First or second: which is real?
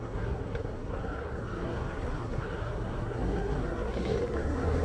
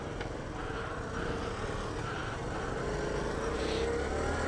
second